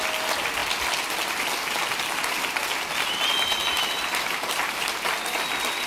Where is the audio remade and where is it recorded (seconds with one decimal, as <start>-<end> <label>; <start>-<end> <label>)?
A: 0.0-5.9 recorded